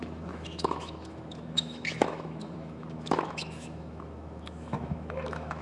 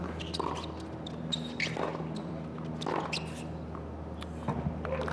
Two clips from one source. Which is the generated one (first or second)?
first